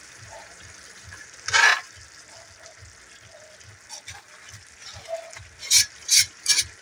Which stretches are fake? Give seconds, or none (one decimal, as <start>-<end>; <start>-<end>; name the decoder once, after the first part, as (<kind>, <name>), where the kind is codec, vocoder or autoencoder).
0.0-1.7 (vocoder, BigVGAN v2); 5.6-6.8